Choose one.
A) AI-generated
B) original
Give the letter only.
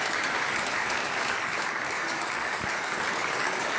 A